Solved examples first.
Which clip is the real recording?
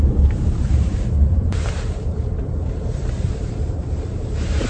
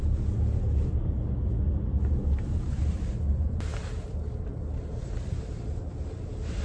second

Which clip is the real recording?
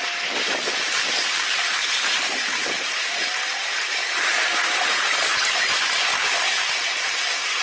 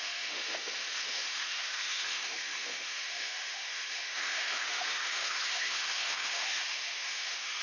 first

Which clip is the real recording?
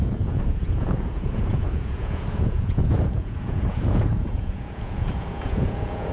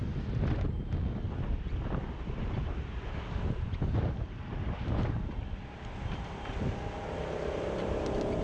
second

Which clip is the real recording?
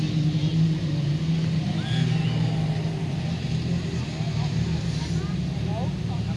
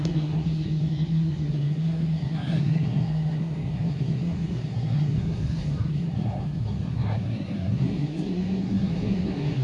first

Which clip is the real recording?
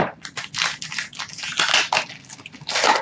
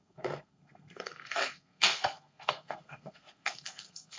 first